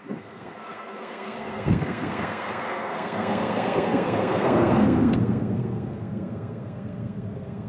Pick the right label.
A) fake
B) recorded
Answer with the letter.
A